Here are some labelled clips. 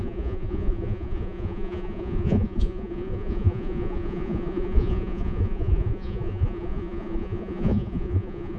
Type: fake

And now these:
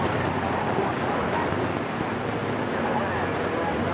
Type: real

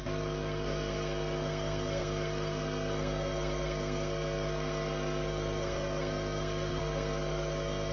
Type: fake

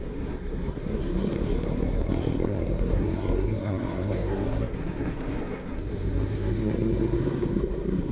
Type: fake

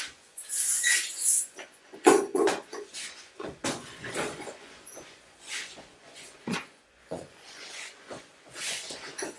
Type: fake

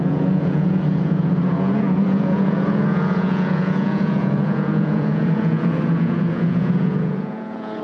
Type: fake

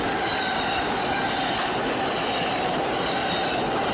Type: real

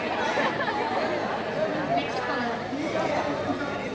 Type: real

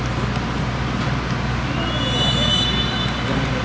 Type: real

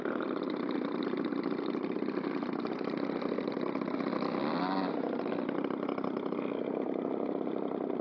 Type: real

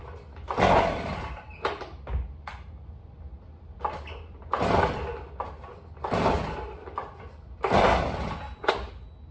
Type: real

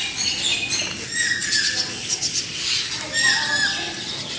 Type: real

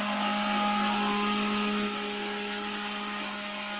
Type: real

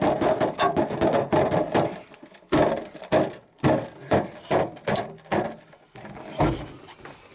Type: real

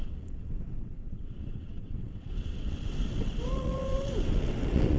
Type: fake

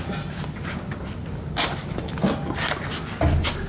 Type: real